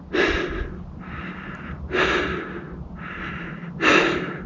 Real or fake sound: real